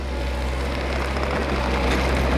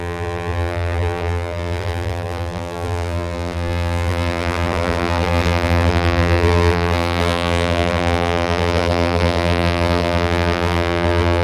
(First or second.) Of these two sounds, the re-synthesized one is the second